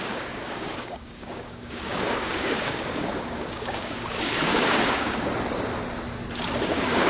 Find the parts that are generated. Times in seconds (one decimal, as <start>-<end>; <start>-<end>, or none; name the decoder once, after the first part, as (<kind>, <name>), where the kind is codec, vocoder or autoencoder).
0.0-5.3 (codec, DAC); 6.6-7.1